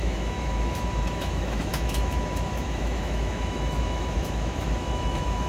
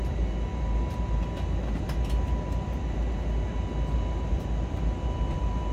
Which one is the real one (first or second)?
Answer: second